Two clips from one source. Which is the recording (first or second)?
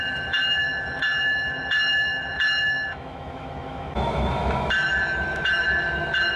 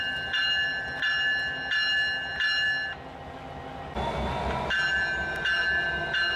second